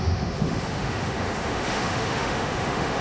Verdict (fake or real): fake